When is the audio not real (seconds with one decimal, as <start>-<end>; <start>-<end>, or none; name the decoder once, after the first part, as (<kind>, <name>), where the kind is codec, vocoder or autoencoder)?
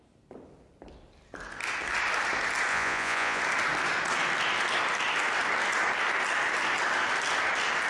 2.7-3.4 (vocoder, Vocos)